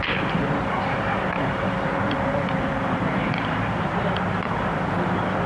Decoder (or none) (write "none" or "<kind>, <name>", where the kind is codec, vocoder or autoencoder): vocoder, BigVGAN v2